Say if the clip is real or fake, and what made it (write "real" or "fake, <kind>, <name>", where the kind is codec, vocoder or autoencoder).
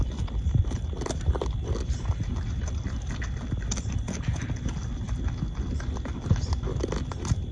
real